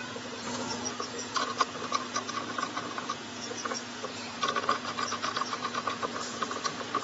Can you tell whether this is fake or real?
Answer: fake